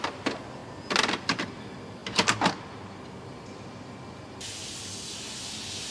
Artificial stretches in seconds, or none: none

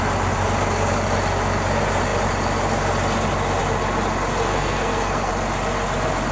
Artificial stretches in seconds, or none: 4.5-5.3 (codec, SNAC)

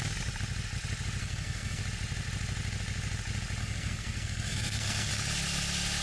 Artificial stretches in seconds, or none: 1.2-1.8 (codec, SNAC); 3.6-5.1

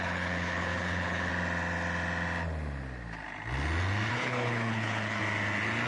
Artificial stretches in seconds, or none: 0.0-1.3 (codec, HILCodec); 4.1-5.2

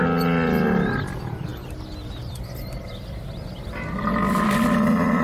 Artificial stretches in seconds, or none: none

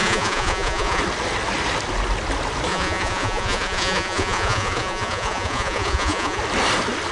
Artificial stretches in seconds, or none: 0.0-1.0 (vocoder, Vocos); 2.7-6.4

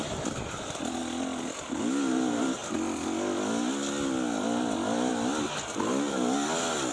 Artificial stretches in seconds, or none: none